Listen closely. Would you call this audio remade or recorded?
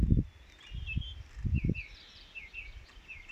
recorded